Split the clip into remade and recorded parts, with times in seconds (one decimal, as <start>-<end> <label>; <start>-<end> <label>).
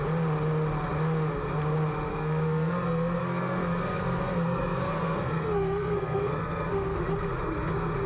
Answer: 0.0-2.1 recorded; 2.1-7.0 remade; 7.0-8.1 recorded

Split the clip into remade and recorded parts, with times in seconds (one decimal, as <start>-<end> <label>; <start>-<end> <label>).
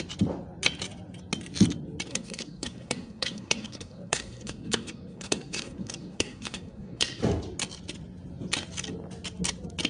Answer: 0.0-2.1 recorded; 2.1-7.2 remade; 7.2-9.9 recorded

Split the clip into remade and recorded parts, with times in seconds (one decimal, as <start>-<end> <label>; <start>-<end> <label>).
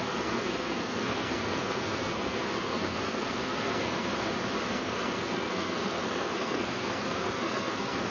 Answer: 0.0-4.1 remade; 4.1-4.7 recorded; 4.7-8.1 remade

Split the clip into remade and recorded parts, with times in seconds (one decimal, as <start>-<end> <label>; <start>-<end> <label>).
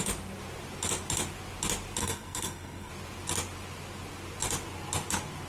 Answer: 0.0-2.0 recorded; 2.0-2.9 remade; 2.9-5.5 recorded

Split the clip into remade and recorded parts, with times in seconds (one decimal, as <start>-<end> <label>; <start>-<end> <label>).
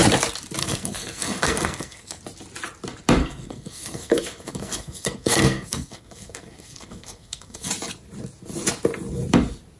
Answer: 0.0-0.6 recorded; 0.6-2.2 remade; 2.2-3.2 recorded; 3.2-7.7 remade; 7.7-9.8 recorded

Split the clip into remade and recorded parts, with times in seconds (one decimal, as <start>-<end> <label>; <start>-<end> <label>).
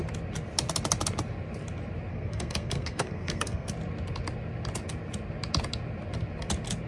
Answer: 0.0-2.1 recorded; 2.1-3.7 remade; 3.7-6.9 recorded